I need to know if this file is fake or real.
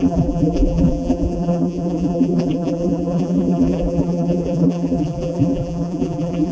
fake